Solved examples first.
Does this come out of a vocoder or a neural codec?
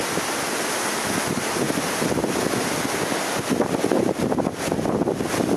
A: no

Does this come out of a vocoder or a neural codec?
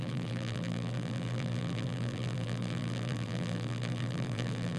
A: yes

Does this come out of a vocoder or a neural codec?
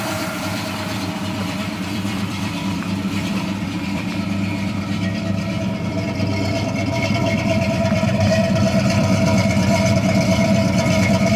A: yes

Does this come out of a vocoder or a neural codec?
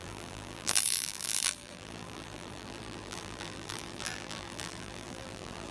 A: yes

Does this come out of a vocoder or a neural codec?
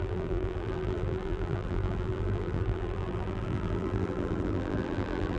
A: yes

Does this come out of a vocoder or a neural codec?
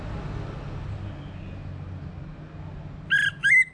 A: no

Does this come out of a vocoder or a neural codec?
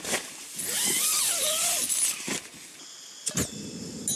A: no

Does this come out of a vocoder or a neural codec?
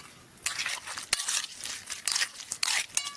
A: no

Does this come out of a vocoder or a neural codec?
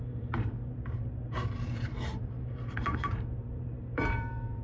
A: yes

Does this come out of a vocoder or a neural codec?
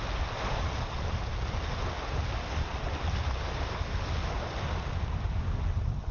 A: no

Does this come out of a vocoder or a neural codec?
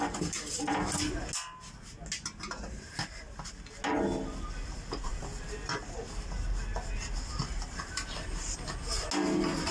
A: no